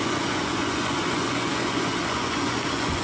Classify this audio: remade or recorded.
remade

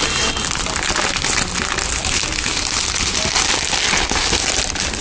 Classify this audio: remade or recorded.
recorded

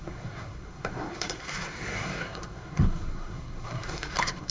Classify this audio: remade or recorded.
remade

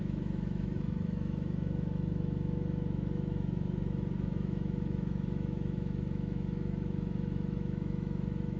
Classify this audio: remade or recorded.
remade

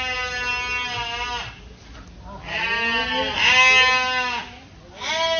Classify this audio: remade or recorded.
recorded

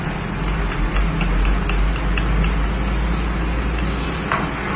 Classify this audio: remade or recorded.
recorded